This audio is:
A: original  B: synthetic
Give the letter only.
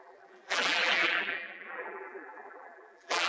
B